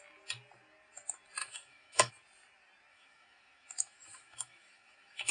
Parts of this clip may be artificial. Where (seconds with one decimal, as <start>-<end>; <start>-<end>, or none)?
1.4-2.1; 2.9-5.3

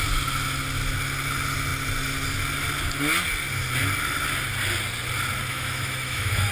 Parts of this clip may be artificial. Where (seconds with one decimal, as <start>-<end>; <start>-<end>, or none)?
5.5-6.5

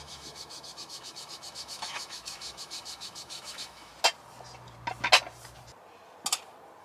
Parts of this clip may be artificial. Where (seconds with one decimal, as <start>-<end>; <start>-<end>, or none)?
0.0-3.9

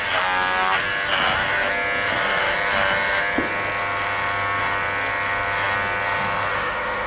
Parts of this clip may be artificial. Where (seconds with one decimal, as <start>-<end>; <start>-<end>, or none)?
6.5-7.1

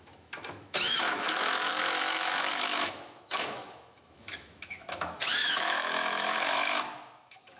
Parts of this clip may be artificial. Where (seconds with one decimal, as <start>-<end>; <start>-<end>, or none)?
0.0-7.6

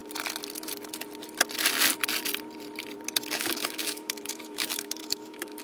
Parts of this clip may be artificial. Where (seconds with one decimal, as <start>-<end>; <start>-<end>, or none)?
3.3-5.6

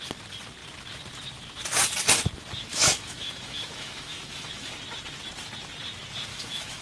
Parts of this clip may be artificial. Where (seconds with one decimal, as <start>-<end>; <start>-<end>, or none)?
2.7-4.7; 6.3-6.8